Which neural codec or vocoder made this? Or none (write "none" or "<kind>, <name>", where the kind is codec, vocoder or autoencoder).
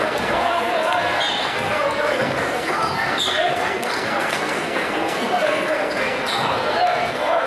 codec, SNAC